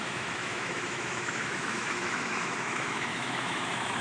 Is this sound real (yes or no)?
no